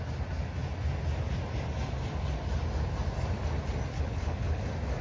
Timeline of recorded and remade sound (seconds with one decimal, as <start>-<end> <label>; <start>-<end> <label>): 0.0-3.9 recorded; 3.9-4.6 remade; 4.6-5.0 recorded